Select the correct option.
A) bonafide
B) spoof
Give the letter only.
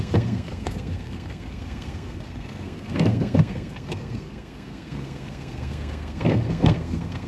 B